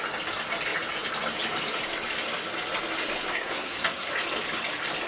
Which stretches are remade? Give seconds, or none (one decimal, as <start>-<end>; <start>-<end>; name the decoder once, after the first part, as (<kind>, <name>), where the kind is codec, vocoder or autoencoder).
3.3-4.1 (codec, SNAC)